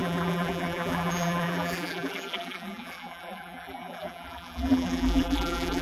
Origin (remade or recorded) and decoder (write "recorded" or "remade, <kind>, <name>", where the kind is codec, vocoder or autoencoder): remade, vocoder, BigVGAN v2